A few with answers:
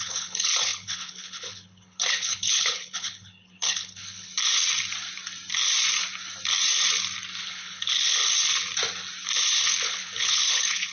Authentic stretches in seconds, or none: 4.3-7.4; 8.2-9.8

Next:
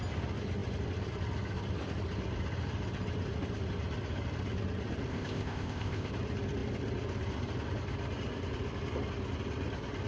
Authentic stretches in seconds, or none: 0.0-5.1; 6.1-10.1

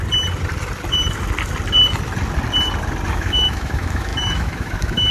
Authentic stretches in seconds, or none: 0.0-3.1

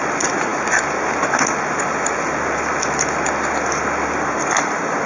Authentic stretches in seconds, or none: 0.0-5.1

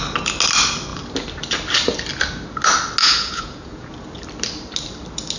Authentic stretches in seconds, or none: 0.0-3.0; 3.9-5.4

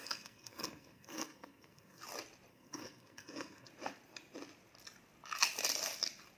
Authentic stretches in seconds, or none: 2.0-2.5; 3.7-6.4

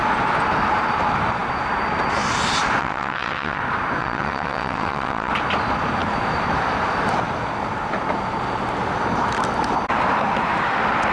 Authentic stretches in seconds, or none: 0.0-2.8; 3.6-4.0; 5.3-11.1

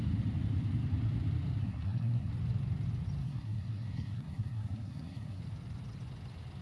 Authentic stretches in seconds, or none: 0.0-1.6; 2.3-3.2; 5.4-6.6